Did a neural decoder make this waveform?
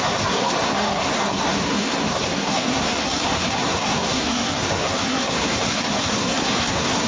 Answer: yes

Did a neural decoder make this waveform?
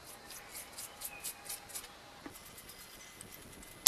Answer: no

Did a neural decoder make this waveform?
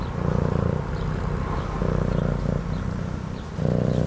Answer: no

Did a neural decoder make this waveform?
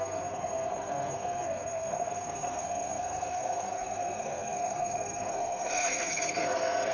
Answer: yes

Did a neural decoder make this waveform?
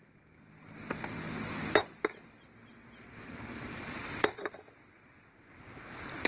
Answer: no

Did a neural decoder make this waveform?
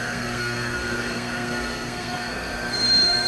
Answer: yes